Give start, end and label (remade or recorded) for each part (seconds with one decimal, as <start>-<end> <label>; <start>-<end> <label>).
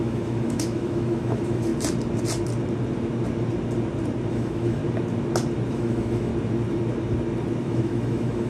0.0-1.7 remade; 1.7-4.3 recorded; 4.3-4.8 remade; 4.8-5.7 recorded; 5.7-6.3 remade; 6.3-7.6 recorded; 7.6-8.5 remade